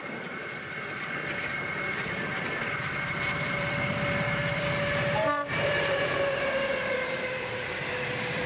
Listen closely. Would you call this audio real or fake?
fake